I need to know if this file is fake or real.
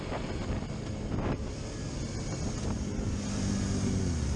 real